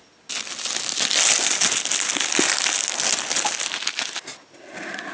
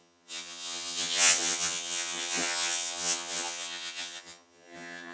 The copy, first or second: second